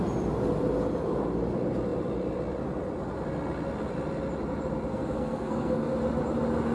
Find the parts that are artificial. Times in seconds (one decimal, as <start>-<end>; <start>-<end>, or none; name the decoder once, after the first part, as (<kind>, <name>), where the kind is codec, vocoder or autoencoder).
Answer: 4.9-5.9 (codec, SNAC)